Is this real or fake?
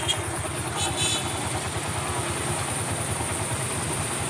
real